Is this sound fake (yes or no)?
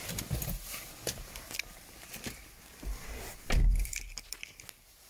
no